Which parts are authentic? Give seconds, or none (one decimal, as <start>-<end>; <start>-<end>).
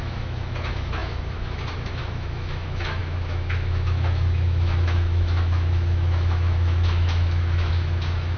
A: none